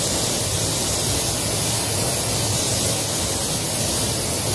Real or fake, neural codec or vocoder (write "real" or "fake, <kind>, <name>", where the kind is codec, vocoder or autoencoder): real